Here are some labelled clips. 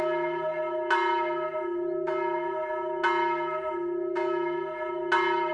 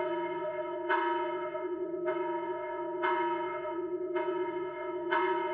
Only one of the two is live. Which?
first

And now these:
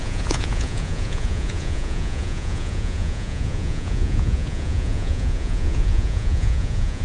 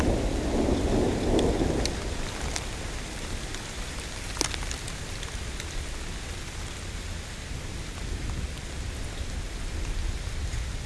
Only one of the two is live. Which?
second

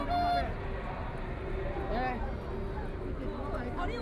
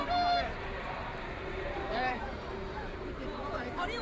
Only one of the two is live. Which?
first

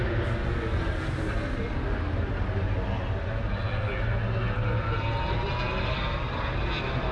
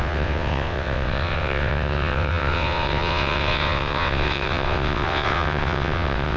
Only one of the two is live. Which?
first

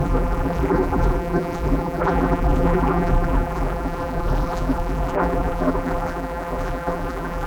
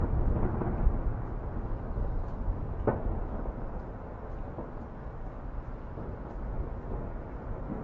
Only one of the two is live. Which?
second